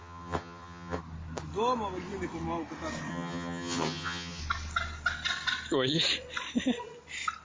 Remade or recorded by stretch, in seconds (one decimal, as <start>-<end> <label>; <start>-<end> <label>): 0.0-1.0 remade; 1.0-3.1 recorded; 3.1-4.4 remade; 4.4-7.4 recorded